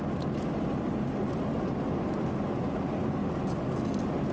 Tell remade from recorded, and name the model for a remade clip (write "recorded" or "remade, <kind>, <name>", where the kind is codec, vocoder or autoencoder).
recorded